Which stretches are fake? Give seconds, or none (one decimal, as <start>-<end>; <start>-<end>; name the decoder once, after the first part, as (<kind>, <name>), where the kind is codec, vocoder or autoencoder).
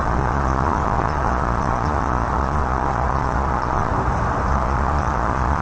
0.0-3.9 (vocoder, Vocos); 4.5-5.6